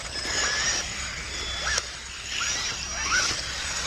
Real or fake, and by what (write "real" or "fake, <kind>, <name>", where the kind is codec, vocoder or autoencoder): real